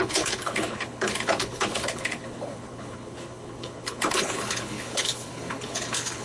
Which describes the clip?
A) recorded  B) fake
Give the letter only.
B